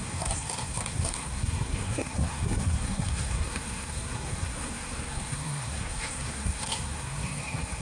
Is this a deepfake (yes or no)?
yes